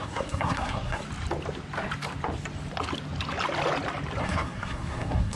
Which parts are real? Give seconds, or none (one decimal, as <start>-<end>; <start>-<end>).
1.0-4.2